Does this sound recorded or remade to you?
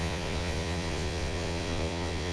remade